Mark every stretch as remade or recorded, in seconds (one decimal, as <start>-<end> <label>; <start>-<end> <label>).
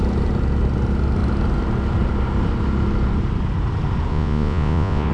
0.0-4.1 recorded; 4.1-5.1 remade